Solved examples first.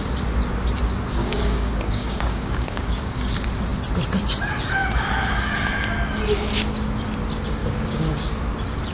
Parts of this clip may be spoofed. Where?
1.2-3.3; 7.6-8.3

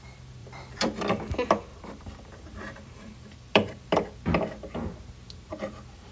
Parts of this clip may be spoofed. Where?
0.4-1.2; 1.7-3.9